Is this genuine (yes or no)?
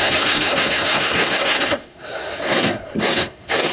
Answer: no